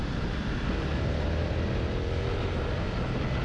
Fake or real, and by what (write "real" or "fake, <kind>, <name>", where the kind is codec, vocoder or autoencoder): real